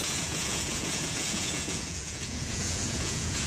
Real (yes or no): no